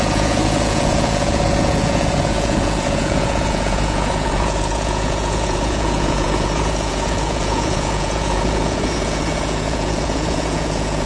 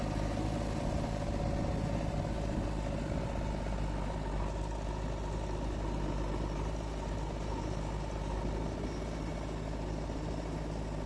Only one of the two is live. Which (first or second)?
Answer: second